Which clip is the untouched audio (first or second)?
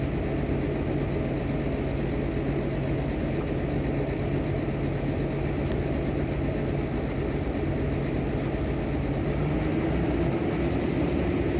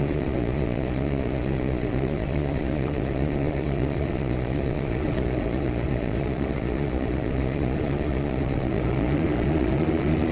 first